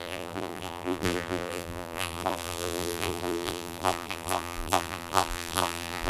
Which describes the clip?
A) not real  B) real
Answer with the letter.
A